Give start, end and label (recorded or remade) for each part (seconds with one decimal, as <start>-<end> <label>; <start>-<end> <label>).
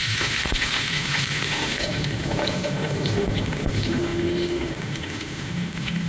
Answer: 0.0-6.1 remade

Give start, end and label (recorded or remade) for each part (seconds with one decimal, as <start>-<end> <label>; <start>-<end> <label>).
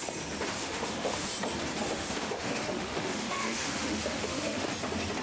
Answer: 0.0-0.6 recorded; 0.6-1.3 remade; 1.3-1.9 recorded; 1.9-4.7 remade; 4.7-5.2 recorded